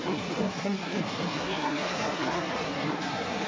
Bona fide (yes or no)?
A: no